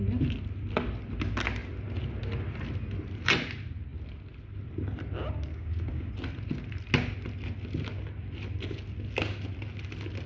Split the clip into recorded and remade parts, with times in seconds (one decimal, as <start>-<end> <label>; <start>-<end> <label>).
0.0-5.5 recorded; 5.5-6.1 remade; 6.1-10.3 recorded

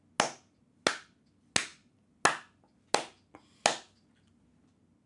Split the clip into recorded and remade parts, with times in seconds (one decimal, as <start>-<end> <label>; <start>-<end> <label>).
0.0-5.1 recorded

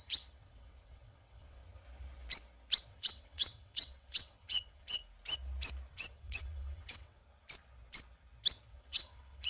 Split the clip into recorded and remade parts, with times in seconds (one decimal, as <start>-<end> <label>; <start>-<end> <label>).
0.0-1.6 remade; 1.6-2.9 recorded; 2.9-5.0 remade; 5.0-5.9 recorded; 5.9-7.2 remade; 7.2-8.7 recorded; 8.7-9.5 remade